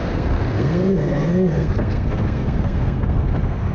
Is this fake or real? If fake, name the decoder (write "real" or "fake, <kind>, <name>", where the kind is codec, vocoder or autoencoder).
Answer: fake, codec, SNAC